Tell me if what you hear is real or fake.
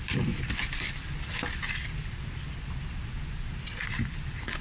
real